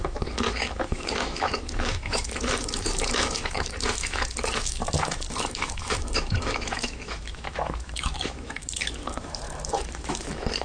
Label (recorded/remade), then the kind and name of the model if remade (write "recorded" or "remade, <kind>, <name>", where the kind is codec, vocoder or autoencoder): remade, autoencoder, DAC-VAE